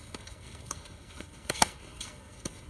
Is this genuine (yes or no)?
no